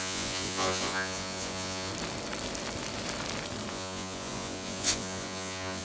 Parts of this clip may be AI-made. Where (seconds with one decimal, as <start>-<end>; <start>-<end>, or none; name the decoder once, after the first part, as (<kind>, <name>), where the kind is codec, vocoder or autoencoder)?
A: 0.0-1.9 (vocoder, Vocos); 3.7-5.8